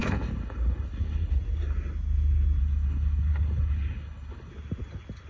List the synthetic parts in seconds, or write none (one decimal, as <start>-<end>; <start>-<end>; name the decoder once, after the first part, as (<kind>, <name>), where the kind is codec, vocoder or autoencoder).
0.0-1.4 (codec, HILCodec); 2.6-4.5